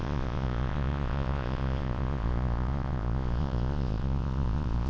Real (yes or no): no